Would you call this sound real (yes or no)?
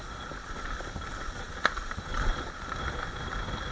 yes